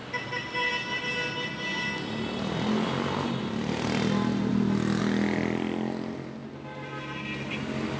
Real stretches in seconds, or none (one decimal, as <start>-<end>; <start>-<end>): 0.0-8.0

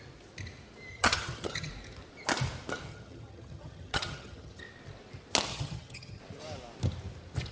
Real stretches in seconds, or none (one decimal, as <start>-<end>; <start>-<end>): 0.0-0.9; 1.7-2.9; 4.6-5.5; 6.2-7.5

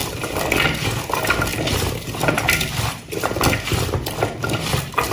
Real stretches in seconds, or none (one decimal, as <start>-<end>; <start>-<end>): 0.0-1.5; 4.6-5.1

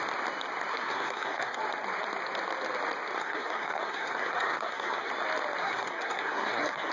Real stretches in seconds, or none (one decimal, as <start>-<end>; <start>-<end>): 0.0-0.7; 1.6-3.2; 5.1-5.6

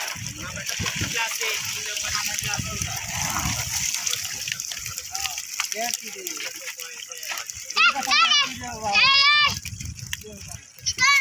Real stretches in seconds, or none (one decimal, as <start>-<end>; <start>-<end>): 0.0-11.2

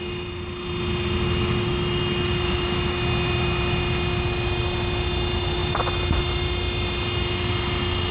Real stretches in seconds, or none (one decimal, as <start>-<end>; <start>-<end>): none

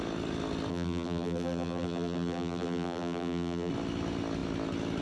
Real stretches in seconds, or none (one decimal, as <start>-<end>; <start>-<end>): 0.0-0.7; 3.7-5.0

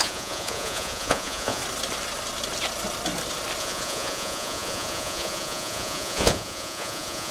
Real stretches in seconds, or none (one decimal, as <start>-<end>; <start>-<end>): 1.6-3.6